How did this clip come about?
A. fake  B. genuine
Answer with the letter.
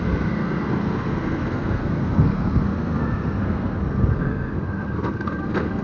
A